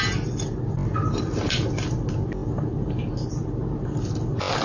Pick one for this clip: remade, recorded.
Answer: recorded